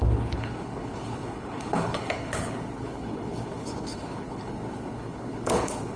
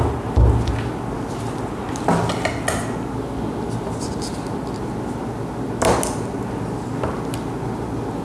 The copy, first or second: first